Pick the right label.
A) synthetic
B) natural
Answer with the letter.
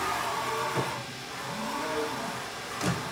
A